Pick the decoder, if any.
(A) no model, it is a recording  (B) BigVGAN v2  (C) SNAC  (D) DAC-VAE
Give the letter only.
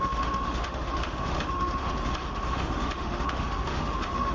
D